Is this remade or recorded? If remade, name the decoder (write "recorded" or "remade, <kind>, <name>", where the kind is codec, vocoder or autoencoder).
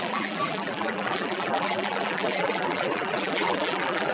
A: remade, vocoder, BigVGAN v2